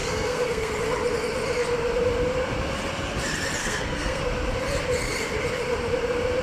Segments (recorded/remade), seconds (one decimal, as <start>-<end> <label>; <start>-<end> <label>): 0.0-0.7 remade; 0.7-3.6 recorded; 3.6-4.2 remade; 4.2-6.4 recorded